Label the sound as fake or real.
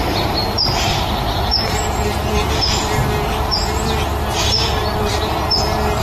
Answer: real